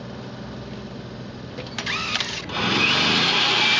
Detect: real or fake real